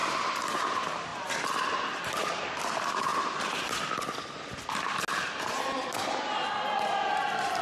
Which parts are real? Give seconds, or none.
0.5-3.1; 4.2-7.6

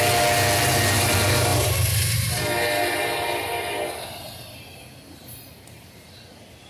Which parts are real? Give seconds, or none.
0.0-6.7

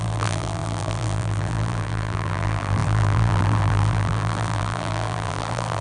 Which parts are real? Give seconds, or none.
none

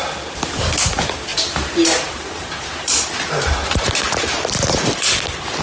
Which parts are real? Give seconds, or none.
0.0-1.3; 4.7-5.6

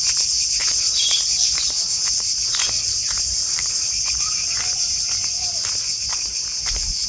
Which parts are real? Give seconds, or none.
0.0-2.4; 3.7-7.1

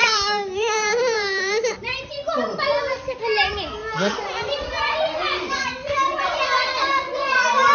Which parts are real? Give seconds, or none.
3.2-3.8

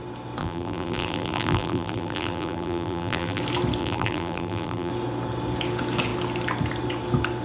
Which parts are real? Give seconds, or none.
0.0-0.4; 3.4-3.8; 4.9-7.4

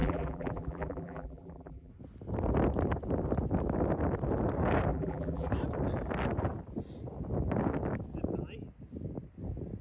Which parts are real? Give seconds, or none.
1.9-4.9; 5.5-9.8